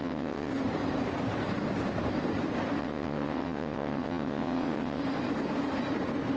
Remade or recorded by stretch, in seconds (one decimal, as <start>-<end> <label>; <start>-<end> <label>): 0.0-0.5 remade; 0.5-2.8 recorded; 2.8-5.0 remade; 5.0-6.4 recorded